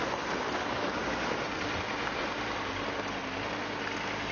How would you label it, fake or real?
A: real